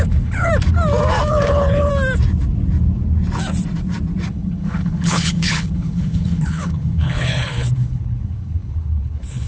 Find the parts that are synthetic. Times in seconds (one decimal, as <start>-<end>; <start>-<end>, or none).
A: 0.0-0.5; 1.3-1.9; 4.3-9.5